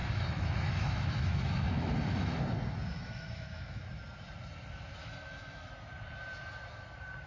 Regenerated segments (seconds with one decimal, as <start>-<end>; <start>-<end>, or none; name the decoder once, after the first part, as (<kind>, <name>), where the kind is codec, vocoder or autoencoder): 0.0-2.4 (autoencoder, DAC-VAE); 2.9-3.8; 5.0-5.7